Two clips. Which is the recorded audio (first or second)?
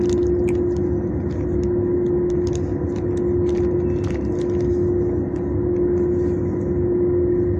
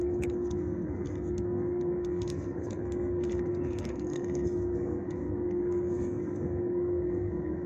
first